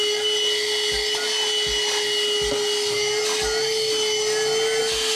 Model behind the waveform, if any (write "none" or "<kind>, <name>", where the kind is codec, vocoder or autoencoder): none